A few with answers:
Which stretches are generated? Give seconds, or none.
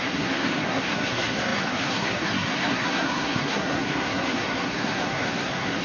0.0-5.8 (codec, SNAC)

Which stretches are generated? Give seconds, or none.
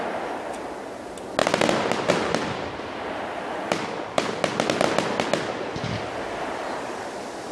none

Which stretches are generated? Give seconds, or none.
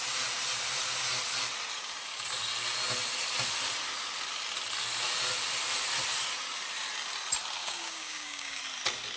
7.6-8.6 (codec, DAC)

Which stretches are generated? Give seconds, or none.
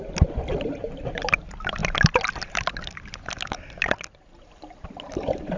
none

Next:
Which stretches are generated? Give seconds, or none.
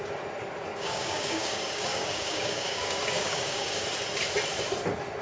0.7-3.8 (codec, DAC)